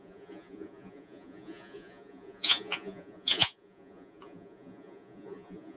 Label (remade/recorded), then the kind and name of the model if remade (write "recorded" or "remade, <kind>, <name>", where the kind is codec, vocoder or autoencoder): remade, vocoder, Vocos